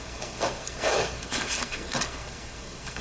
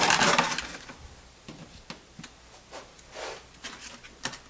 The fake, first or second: first